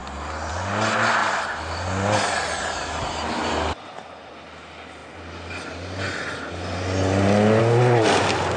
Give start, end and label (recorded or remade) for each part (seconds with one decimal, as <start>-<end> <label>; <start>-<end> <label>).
0.0-8.6 recorded